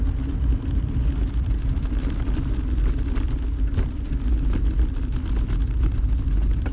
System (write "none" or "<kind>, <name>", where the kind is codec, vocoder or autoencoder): none